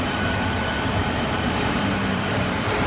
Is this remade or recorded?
remade